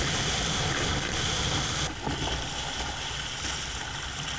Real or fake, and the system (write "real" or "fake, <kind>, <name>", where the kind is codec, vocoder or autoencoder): real